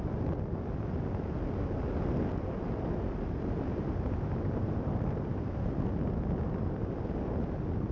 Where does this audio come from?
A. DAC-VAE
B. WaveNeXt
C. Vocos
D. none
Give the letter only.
D